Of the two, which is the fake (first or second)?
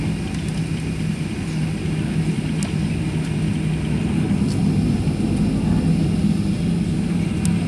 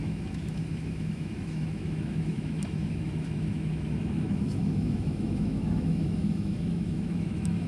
second